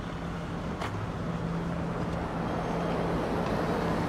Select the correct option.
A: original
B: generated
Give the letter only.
A